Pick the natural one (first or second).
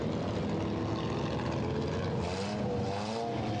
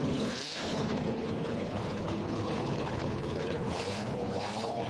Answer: first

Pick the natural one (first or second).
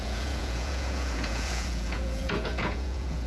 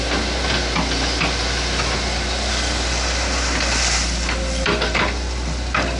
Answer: second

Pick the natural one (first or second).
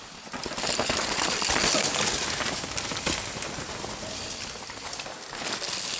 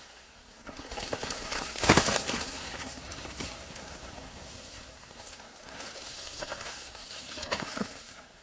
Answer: first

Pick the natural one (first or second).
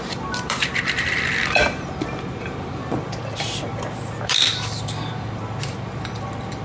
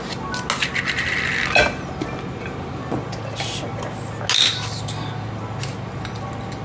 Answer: second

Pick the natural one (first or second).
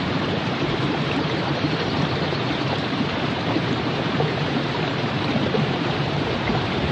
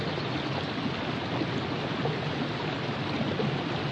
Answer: second